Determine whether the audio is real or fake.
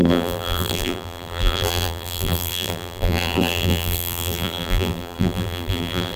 fake